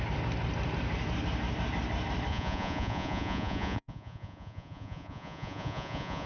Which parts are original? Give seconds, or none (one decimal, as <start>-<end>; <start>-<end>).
0.0-2.3